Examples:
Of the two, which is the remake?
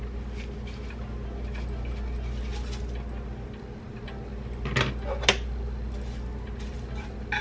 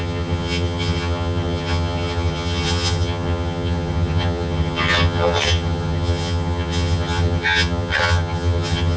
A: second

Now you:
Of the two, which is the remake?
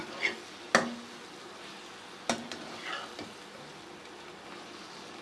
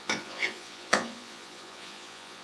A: second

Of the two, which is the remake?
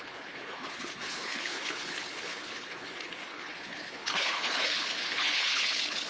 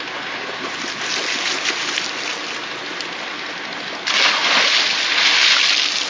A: first